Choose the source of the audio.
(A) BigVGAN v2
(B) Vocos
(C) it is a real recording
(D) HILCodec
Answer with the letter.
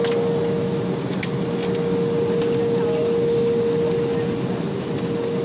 C